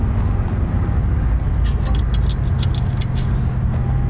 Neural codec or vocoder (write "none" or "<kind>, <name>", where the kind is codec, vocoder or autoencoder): none